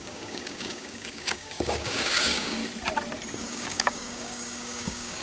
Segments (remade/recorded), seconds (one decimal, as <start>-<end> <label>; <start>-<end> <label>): 0.0-2.6 remade; 2.6-3.4 recorded; 3.4-5.2 remade